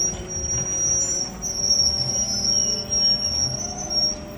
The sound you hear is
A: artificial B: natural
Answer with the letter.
B